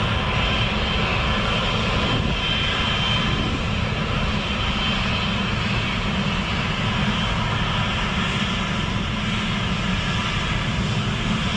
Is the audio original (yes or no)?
yes